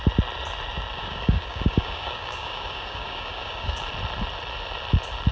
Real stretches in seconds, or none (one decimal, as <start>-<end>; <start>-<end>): 0.0-0.9; 3.8-5.3